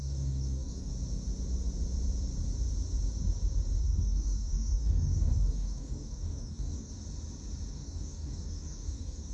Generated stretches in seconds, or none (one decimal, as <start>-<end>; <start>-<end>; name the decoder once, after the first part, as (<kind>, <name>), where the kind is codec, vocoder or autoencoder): 0.0-0.9 (codec, DAC); 3.8-6.9; 7.7-9.3